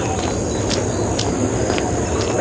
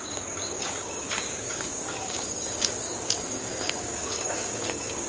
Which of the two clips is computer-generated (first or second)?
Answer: second